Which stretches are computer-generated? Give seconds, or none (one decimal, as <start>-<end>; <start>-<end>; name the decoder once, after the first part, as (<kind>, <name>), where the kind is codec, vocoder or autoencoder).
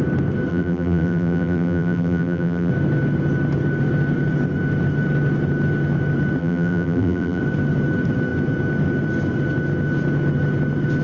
0.5-2.7 (vocoder, BigVGAN v2); 6.4-7.4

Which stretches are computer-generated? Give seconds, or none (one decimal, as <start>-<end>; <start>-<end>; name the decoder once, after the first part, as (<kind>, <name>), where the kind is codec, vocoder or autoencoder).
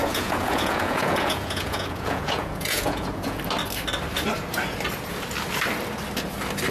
0.0-3.4 (vocoder, Vocos)